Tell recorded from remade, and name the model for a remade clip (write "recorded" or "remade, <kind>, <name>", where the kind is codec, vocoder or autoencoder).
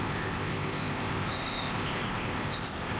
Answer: remade, codec, ZipCodec